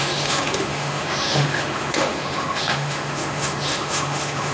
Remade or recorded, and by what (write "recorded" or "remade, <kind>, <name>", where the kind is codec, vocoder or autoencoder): remade, autoencoder, DAC-VAE